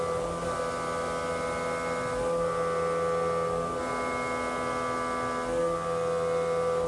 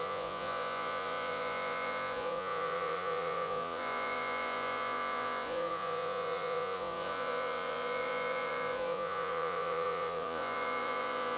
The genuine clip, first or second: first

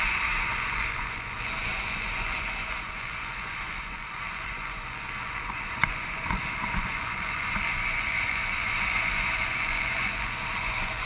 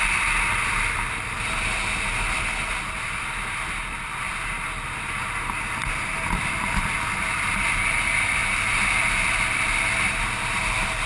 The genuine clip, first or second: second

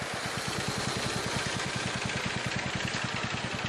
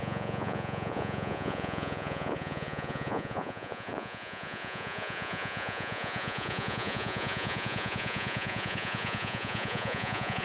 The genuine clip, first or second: first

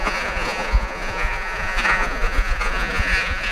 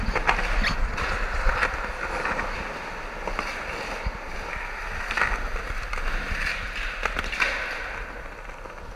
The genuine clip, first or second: second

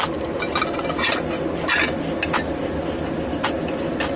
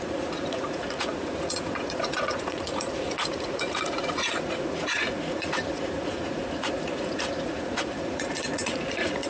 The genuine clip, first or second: first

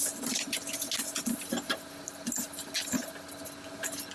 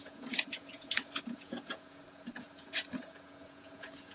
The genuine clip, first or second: first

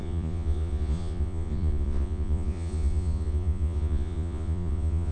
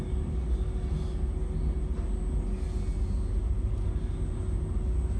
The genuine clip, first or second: second